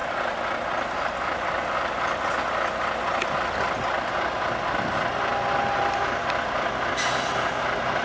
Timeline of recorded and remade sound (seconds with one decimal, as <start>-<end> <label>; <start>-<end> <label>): 0.0-8.0 recorded

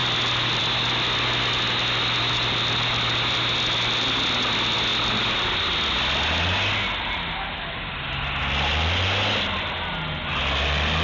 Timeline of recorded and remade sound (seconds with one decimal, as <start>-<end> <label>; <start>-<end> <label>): 0.0-11.0 recorded

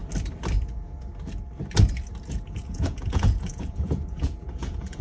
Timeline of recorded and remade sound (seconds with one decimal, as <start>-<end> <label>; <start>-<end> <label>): 0.0-0.6 recorded; 0.6-1.1 remade; 1.1-2.3 recorded; 2.3-5.0 remade